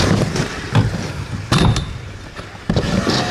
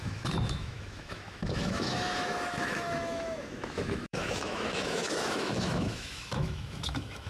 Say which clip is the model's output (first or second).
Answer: second